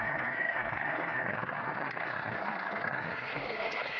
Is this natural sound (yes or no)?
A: no